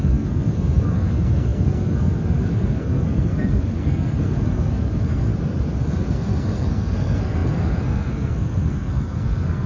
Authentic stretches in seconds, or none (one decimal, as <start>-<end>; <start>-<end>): 5.3-5.9